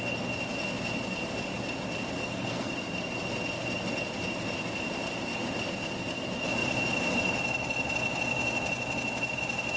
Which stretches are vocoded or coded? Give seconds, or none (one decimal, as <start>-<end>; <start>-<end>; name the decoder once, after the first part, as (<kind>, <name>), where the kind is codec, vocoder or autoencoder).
2.2-2.7 (codec, SNAC)

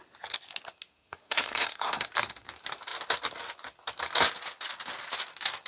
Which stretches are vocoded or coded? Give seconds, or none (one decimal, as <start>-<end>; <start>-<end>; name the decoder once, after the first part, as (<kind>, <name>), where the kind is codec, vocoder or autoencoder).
0.9-2.1 (codec, SNAC)